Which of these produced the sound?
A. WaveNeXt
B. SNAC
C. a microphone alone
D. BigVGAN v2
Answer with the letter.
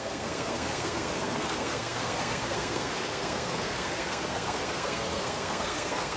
B